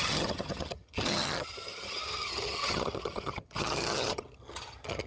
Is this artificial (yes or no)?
yes